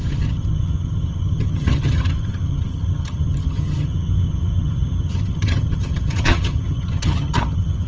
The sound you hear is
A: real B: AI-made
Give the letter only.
B